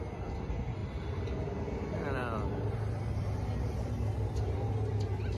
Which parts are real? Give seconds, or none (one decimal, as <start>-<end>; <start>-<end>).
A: 0.0-5.4

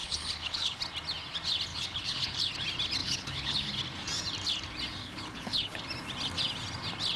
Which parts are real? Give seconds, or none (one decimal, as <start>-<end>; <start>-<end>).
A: 0.8-1.7; 2.5-3.0; 3.7-5.0; 5.8-7.2

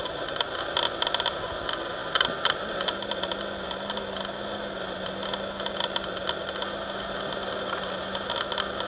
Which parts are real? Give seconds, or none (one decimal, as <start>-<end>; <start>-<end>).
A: 0.0-8.9

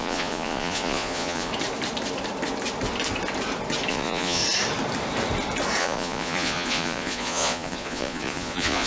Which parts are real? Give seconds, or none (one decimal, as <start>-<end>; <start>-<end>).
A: 1.5-3.9; 4.4-5.8

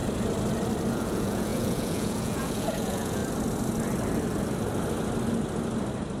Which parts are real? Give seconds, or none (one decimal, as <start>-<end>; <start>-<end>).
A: 0.0-0.9; 3.2-6.2

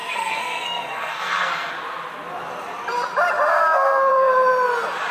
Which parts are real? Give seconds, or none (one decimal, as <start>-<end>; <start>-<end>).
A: 1.7-3.5; 4.1-5.1

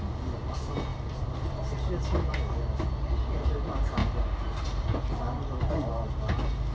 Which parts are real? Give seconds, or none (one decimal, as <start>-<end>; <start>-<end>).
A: 0.0-6.7

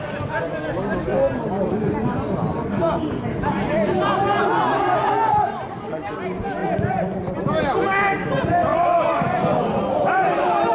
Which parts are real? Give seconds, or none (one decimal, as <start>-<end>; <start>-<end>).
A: 0.0-6.6; 7.3-10.7